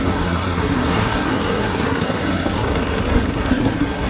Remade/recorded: remade